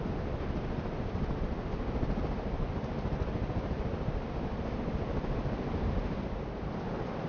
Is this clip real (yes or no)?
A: yes